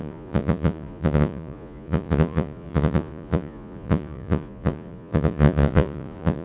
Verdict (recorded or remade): remade